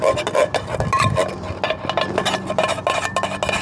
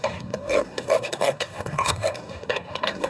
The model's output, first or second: second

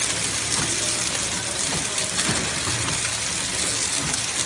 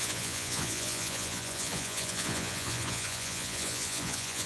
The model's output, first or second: second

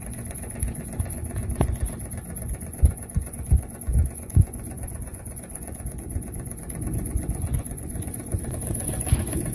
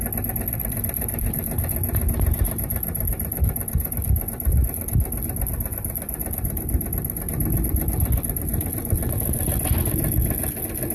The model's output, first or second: first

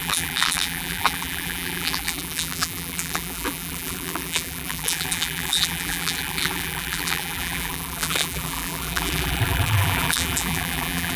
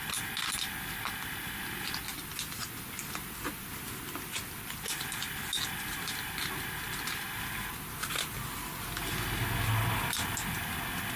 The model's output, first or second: first